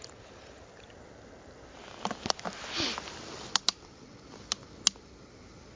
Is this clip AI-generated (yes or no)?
no